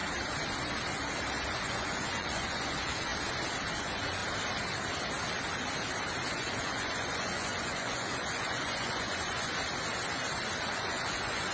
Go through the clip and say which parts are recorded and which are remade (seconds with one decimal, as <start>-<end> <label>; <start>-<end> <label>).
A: 0.0-1.6 recorded; 1.6-3.1 remade; 3.1-3.8 recorded; 3.8-4.2 remade; 4.2-6.3 recorded; 6.3-9.5 remade; 9.5-10.7 recorded; 10.7-11.5 remade

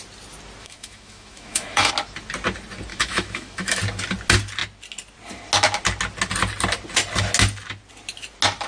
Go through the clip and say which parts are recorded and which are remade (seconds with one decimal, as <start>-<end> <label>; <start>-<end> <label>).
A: 0.0-0.6 recorded; 0.6-1.9 remade; 1.9-2.9 recorded; 2.9-3.8 remade; 3.8-8.7 recorded

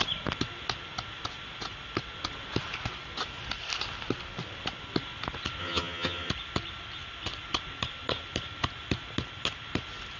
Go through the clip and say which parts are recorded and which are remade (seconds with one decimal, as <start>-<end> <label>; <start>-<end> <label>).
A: 0.0-5.6 recorded; 5.6-6.3 remade; 6.3-10.2 recorded

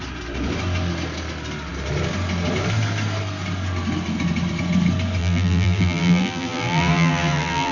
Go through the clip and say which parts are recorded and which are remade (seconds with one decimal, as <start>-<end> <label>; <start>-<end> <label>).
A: 0.0-5.2 recorded; 5.2-7.7 remade

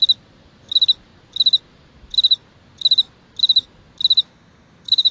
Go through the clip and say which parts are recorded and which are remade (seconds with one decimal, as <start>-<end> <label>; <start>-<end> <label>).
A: 0.0-4.3 recorded; 4.3-5.1 remade

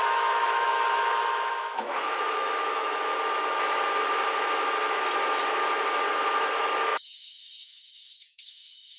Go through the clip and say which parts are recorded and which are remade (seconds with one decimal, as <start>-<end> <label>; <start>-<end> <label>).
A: 0.0-3.1 remade; 3.1-6.5 recorded; 6.5-9.0 remade